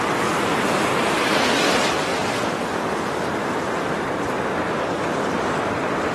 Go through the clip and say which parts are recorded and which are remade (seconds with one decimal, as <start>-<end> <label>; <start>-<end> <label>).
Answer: 0.0-6.1 recorded